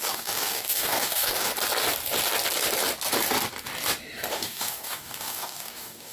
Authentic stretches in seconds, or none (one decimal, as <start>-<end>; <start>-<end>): 1.5-4.3